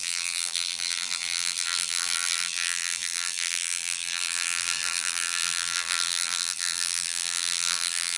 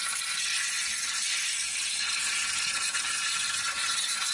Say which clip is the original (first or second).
second